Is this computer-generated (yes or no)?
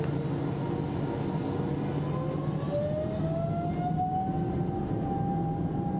no